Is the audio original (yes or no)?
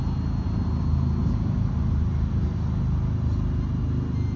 yes